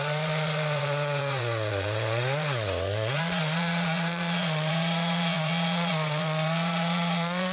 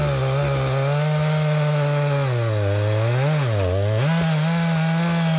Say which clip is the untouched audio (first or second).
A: second